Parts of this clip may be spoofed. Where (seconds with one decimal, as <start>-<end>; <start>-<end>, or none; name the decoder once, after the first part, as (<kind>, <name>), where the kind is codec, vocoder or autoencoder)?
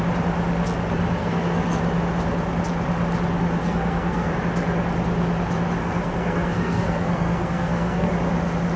1.2-1.8 (codec, SNAC); 3.6-4.3; 5.8-8.1